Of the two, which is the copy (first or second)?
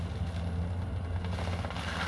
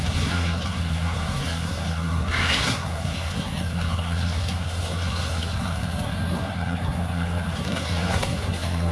second